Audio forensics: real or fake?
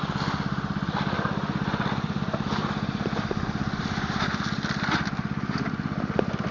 real